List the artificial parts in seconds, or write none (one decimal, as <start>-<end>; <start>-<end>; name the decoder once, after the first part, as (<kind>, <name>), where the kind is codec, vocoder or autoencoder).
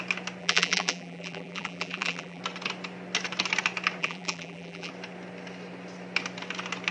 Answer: 0.4-2.4 (vocoder, BigVGAN v2); 4.0-4.9